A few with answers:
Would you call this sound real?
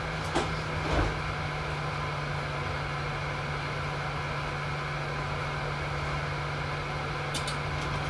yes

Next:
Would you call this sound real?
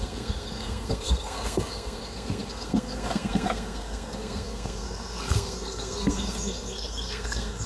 no